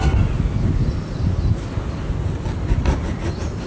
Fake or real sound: real